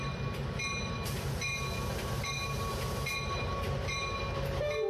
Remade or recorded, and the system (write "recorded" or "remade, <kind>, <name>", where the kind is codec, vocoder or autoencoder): recorded